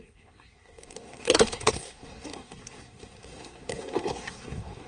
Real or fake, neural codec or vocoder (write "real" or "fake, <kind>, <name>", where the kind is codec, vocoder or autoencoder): fake, codec, SNAC